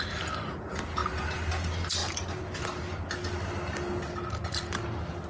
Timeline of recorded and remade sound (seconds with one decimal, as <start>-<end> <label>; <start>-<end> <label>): 0.0-5.3 recorded